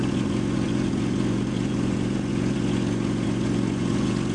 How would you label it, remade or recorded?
remade